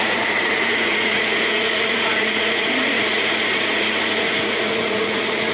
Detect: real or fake fake